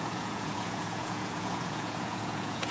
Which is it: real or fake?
fake